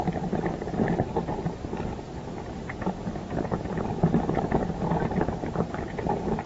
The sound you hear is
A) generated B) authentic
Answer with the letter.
B